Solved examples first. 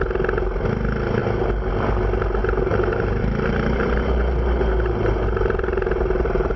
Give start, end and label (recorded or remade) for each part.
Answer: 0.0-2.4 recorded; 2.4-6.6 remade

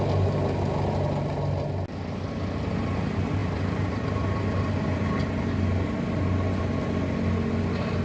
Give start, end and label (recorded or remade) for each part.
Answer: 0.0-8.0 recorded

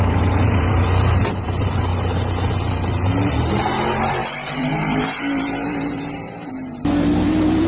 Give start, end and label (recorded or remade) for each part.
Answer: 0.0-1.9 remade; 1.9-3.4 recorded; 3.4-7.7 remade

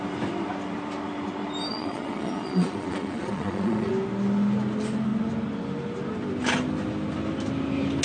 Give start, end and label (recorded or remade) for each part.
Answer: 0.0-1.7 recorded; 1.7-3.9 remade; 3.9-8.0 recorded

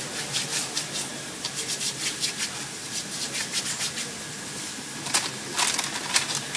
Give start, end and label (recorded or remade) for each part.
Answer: 0.0-6.6 recorded